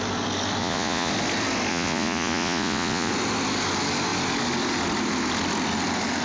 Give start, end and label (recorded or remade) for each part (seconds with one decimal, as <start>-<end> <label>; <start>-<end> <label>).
0.0-0.6 recorded; 0.6-1.1 remade; 1.1-1.7 recorded; 1.7-3.1 remade; 3.1-6.2 recorded